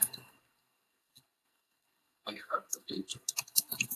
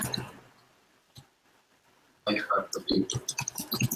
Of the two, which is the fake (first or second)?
first